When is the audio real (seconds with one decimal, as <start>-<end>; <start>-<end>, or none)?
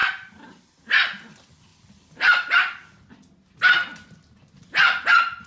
0.6-1.7; 3.1-5.5